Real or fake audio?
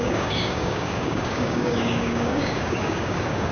fake